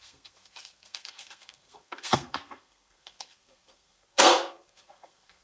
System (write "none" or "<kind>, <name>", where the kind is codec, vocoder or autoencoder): codec, SNAC